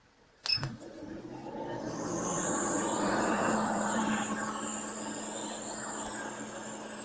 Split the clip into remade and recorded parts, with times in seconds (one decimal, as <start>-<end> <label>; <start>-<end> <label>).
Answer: 0.0-0.5 recorded; 0.5-1.0 remade; 1.0-2.3 recorded; 2.3-4.0 remade; 4.0-7.0 recorded